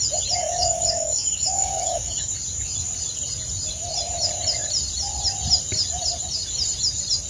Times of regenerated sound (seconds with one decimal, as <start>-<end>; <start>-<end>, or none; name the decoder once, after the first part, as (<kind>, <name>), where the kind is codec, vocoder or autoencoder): 0.4-2.3 (codec, DAC)